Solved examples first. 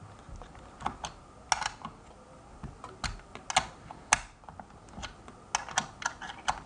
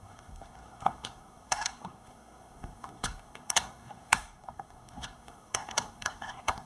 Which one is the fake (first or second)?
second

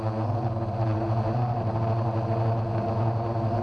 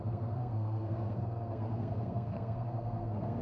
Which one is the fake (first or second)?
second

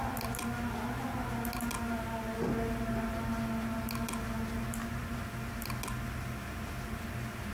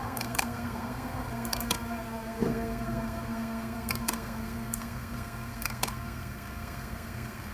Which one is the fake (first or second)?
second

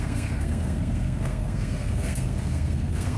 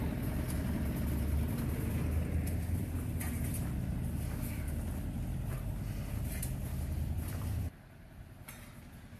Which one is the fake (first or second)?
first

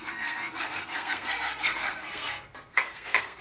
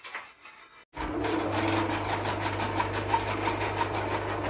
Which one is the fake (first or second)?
first